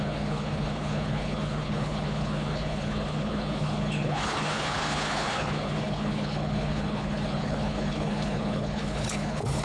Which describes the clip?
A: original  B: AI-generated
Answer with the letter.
B